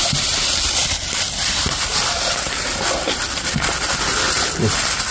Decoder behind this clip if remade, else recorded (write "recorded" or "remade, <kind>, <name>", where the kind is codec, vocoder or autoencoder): recorded